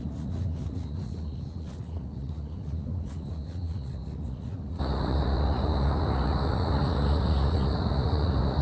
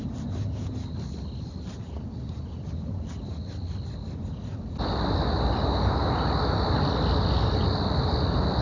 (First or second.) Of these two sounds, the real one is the second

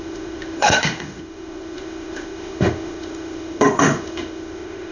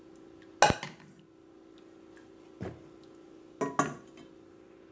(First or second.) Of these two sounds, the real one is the second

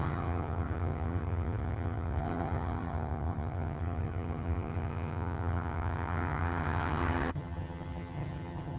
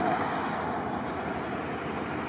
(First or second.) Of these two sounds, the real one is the second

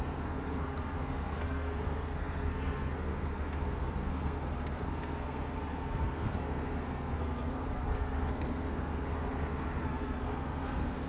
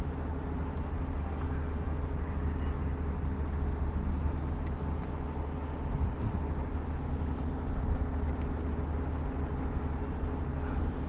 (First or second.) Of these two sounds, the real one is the second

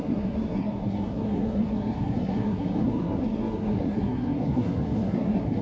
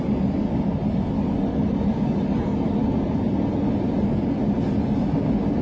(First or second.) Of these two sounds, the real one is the second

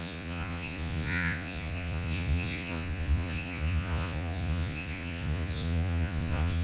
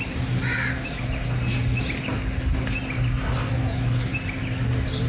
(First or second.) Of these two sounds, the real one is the second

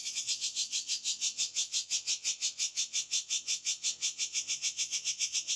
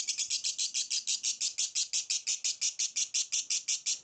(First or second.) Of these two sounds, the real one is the second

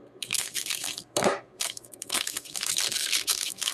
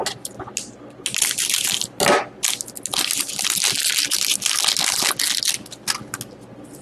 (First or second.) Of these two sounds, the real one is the second